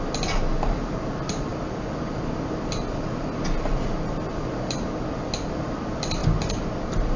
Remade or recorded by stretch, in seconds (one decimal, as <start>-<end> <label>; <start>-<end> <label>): 0.0-7.2 recorded